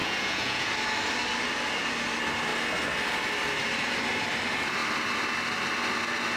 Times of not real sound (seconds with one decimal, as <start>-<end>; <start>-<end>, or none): 0.0-0.7